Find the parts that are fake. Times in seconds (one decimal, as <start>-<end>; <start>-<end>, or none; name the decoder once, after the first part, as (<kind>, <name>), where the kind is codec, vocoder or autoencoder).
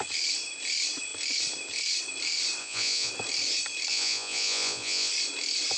2.6-3.1 (vocoder, Vocos); 3.9-5.1